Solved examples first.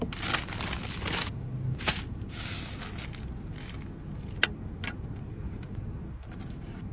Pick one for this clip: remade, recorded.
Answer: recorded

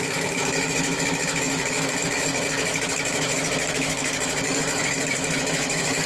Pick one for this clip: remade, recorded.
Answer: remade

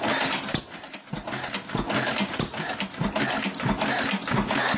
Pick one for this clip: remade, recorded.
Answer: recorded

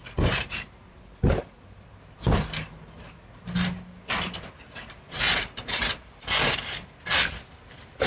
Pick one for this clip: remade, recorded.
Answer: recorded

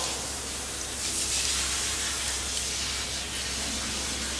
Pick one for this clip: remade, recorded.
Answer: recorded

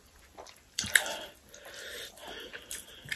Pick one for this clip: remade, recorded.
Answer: recorded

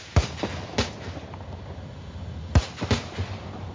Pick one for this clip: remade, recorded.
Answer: recorded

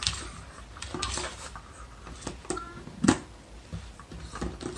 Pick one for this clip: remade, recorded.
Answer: recorded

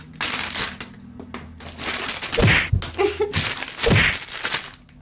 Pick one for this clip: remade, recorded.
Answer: recorded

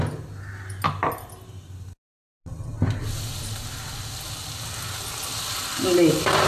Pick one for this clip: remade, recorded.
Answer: recorded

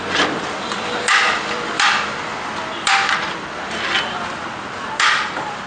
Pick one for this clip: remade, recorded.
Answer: remade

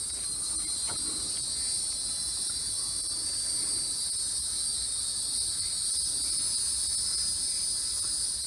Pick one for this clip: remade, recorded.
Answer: recorded